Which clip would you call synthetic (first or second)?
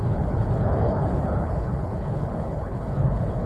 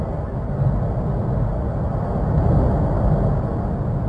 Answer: first